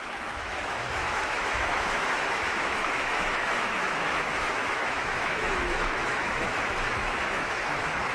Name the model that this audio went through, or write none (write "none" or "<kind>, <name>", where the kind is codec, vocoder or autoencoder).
autoencoder, DAC-VAE